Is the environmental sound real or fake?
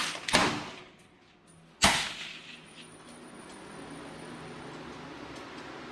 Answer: real